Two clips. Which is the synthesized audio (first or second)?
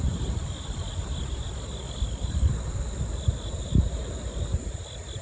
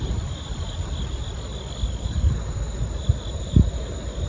first